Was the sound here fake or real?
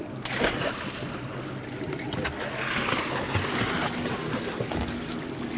real